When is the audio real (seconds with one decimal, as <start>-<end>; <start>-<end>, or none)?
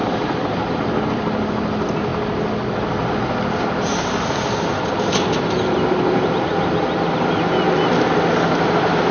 0.7-9.1